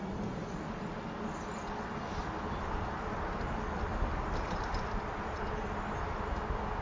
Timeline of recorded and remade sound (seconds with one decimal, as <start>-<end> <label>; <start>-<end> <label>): 0.0-6.8 recorded

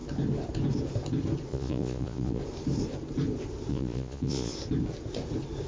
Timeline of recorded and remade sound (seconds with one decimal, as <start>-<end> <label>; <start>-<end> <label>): 0.0-1.5 recorded; 1.5-2.4 remade; 2.4-3.7 recorded; 3.7-4.5 remade; 4.5-5.7 recorded

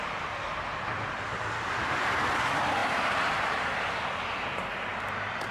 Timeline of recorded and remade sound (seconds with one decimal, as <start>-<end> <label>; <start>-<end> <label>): 0.0-2.8 recorded; 2.8-3.5 remade; 3.5-4.9 recorded; 4.9-5.5 remade

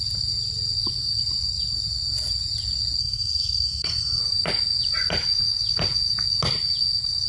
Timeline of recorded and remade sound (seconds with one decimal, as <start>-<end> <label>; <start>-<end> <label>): 0.0-3.0 recorded; 3.0-4.2 remade; 4.2-7.3 recorded

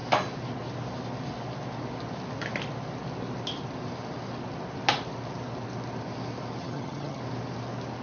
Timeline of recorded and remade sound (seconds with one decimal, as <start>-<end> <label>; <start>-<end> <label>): 0.0-6.6 recorded; 6.6-7.2 remade; 7.2-8.0 recorded

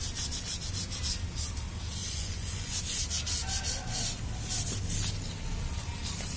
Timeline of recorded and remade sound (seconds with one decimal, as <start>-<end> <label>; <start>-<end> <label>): 0.0-2.0 recorded; 2.0-2.8 remade; 2.8-6.4 recorded

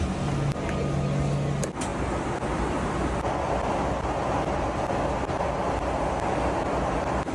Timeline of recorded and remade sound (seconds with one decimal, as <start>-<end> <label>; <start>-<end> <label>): 0.0-7.3 recorded

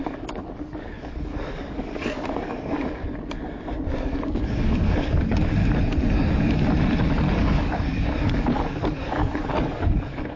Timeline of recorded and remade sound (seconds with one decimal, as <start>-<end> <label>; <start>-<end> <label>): 0.0-3.0 remade; 3.0-4.0 recorded; 4.0-5.6 remade; 5.6-7.4 recorded; 7.4-10.4 remade